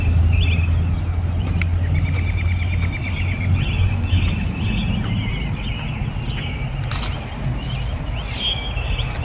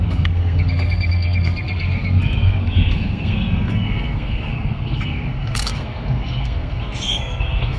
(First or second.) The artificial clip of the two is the second